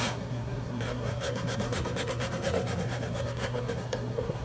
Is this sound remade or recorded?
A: remade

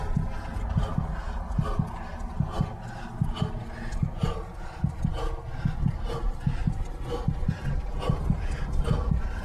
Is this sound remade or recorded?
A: recorded